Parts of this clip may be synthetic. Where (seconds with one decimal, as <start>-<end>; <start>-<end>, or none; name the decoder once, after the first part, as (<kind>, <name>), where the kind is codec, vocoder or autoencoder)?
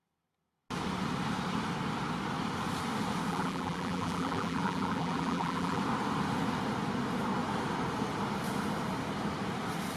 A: 3.3-5.8 (vocoder, BigVGAN v2)